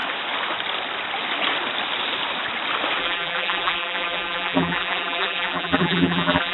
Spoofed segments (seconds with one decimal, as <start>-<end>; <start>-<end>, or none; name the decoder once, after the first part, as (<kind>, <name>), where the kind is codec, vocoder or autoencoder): 3.0-6.5 (vocoder, BigVGAN v2)